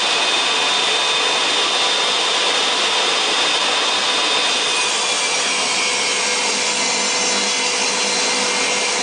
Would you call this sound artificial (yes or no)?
no